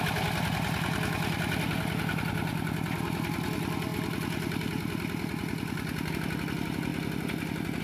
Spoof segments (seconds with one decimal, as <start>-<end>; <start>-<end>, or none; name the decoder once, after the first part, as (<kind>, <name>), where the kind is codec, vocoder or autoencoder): none